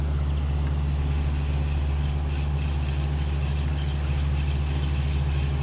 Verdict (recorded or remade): recorded